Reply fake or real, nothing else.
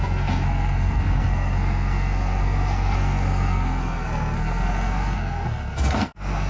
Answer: fake